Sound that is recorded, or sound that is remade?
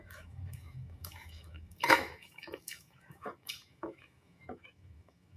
remade